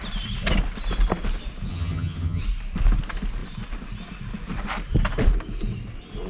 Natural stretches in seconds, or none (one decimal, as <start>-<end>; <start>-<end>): 0.0-1.7; 2.4-6.3